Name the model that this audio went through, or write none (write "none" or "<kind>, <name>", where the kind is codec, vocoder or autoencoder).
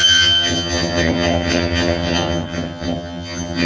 vocoder, HiFi-GAN